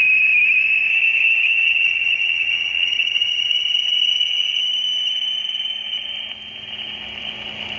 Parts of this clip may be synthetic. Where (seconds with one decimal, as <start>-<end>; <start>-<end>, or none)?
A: 0.9-4.6